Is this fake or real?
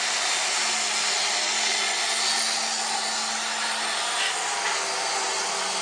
real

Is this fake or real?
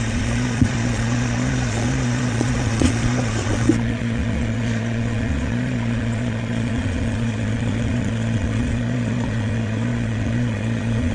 fake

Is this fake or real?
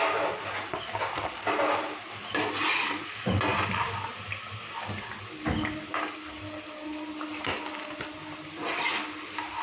real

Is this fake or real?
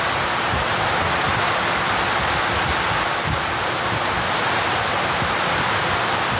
real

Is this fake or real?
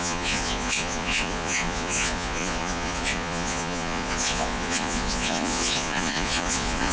fake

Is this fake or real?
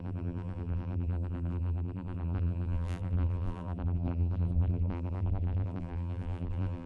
fake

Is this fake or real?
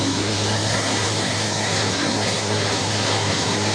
fake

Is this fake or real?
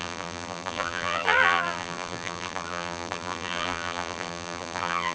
fake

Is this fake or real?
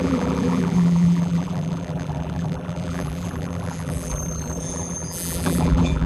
fake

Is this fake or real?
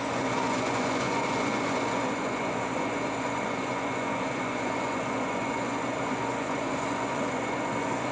fake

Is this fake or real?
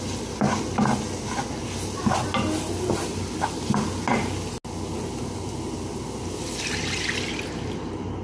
real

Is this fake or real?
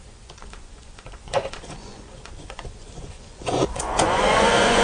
fake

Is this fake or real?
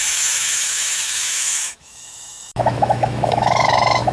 fake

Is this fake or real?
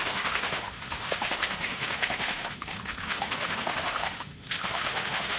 fake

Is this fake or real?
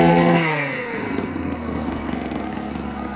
fake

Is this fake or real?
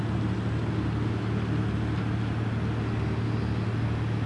real